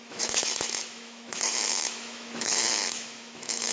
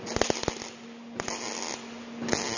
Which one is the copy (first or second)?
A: first